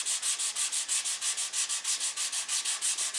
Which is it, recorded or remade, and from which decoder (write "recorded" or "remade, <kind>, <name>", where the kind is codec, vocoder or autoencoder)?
recorded